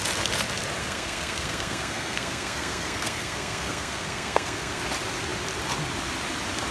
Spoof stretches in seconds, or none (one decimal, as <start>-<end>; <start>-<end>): 0.8-4.8